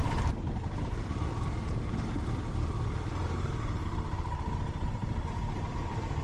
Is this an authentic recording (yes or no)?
no